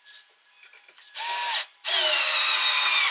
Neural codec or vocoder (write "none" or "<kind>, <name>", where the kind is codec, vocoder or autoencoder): none